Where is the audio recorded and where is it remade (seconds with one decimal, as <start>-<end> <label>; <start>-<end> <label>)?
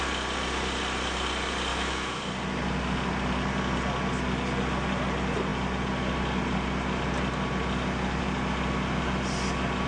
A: 0.0-1.7 recorded; 1.7-2.2 remade; 2.2-9.9 recorded